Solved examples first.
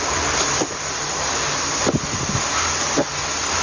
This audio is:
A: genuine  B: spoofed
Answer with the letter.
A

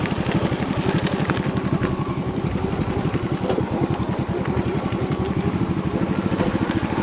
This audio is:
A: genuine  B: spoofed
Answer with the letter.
A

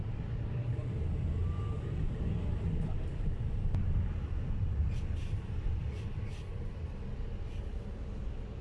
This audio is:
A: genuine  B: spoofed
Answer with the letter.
A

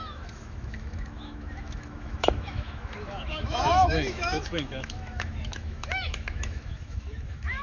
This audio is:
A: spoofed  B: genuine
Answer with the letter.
A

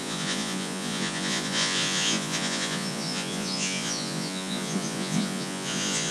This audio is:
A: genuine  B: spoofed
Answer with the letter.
B